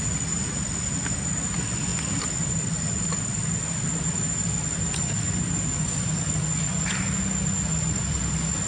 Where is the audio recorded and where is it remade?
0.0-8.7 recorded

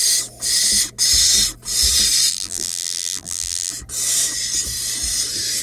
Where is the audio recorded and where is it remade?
0.0-2.3 recorded; 2.3-3.7 remade; 3.7-5.6 recorded

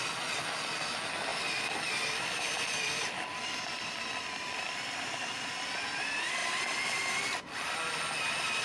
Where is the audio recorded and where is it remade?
0.0-8.6 remade

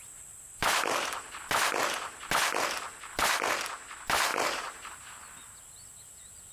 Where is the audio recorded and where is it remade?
0.0-4.3 recorded; 4.3-4.9 remade; 4.9-6.5 recorded